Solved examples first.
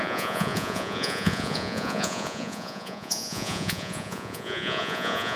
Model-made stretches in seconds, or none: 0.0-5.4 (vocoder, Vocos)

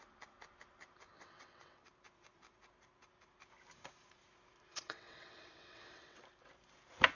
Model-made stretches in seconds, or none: 1.1-1.9 (vocoder, WaveNeXt); 4.7-6.2